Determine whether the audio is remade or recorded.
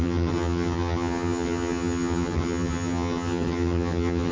remade